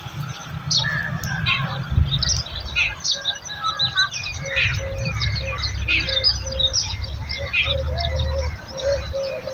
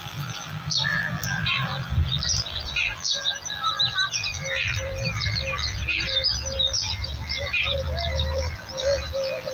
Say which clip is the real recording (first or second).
first